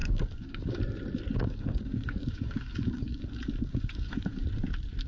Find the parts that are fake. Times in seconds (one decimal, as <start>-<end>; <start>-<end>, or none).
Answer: 0.0-0.8; 1.3-4.4